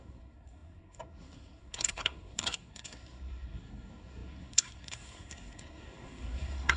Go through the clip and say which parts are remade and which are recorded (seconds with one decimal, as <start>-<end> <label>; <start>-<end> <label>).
0.0-6.8 remade